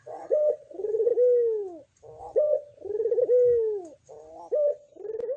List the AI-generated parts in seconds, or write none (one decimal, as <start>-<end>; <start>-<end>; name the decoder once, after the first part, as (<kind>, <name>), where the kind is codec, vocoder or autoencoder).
0.0-1.1 (vocoder, WaveNeXt); 2.2-2.6